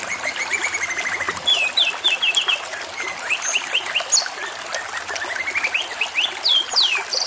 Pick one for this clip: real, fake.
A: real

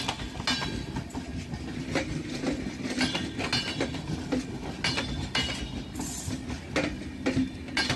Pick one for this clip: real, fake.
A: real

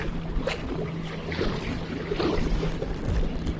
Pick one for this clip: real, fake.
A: real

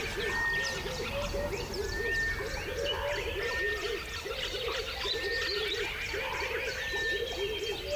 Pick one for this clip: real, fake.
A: real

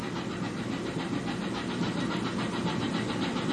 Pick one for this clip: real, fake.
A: real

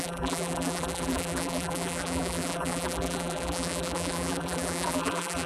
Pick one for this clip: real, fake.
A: fake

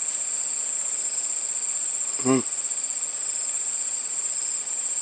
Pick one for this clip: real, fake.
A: real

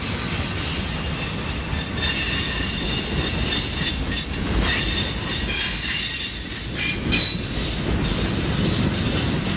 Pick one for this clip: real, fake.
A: real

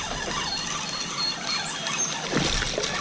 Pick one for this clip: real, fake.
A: real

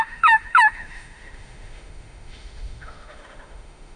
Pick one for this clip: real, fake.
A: fake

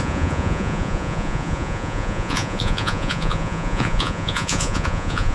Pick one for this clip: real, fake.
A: fake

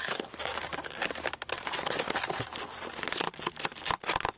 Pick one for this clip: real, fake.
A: real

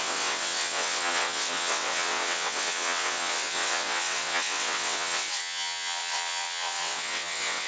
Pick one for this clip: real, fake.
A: fake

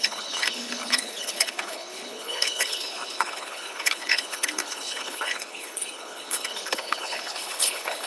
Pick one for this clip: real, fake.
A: fake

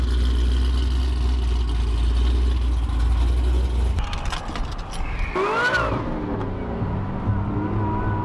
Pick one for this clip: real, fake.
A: real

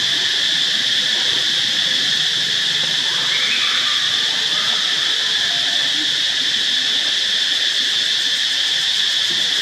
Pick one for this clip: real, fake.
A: real